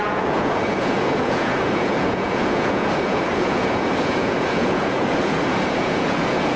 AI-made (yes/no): yes